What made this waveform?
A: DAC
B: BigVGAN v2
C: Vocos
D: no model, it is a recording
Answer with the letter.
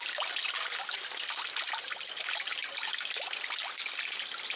D